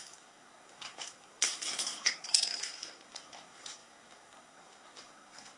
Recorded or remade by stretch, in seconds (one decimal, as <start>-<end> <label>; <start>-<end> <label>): 0.0-5.6 remade